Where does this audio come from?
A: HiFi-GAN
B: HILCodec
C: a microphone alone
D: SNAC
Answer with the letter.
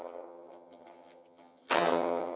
A